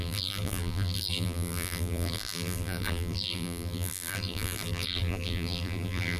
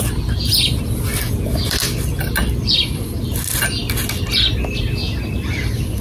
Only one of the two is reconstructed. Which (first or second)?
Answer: first